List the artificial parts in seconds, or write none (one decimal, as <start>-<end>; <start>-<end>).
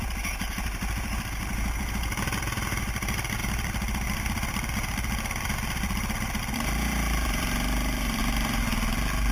0.0-8.2